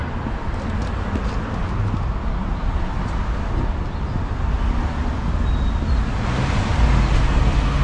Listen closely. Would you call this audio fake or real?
real